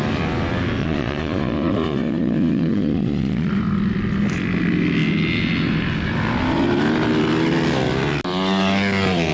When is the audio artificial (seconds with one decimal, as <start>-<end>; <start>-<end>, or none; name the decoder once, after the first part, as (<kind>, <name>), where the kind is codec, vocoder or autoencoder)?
0.8-3.5 (vocoder, Vocos)